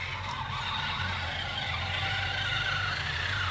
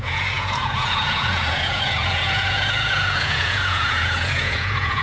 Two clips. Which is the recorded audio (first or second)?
first